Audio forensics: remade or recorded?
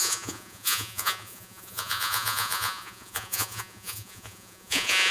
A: remade